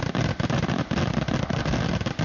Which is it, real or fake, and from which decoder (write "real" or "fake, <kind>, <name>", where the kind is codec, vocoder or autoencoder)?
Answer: real